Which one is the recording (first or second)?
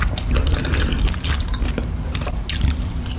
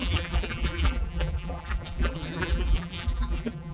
first